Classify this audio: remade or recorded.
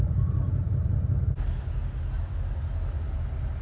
recorded